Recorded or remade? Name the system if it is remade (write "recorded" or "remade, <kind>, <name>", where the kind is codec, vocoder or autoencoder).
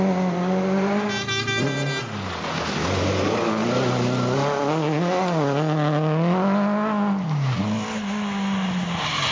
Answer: recorded